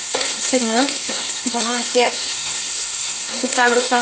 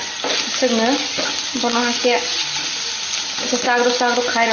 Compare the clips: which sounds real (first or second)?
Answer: second